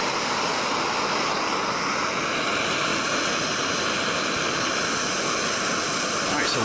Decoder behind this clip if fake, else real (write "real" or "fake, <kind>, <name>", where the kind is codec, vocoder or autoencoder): real